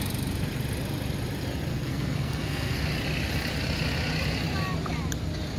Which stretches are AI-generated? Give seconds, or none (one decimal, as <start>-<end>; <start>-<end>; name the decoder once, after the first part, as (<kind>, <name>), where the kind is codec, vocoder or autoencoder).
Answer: 1.7-2.8 (codec, SNAC)